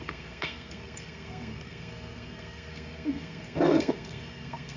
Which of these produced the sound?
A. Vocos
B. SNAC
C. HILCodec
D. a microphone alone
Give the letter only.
B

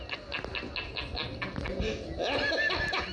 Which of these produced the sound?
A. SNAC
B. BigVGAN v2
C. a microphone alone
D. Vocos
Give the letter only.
C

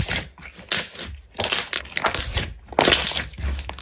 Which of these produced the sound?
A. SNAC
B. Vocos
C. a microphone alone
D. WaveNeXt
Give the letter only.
C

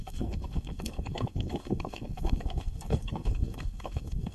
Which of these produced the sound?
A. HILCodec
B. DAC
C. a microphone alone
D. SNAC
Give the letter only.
D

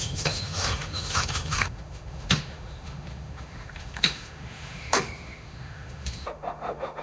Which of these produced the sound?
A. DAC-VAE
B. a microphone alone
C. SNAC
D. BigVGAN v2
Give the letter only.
A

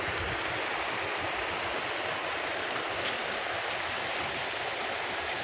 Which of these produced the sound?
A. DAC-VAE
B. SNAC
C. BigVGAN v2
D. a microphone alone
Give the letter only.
D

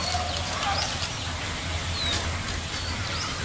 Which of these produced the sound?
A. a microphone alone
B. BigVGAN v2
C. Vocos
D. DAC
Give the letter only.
A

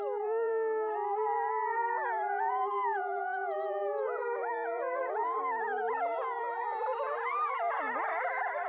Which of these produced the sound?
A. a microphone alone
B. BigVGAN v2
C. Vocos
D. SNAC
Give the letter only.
B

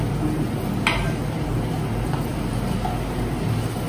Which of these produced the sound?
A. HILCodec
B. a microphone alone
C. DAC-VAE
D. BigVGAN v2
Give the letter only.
B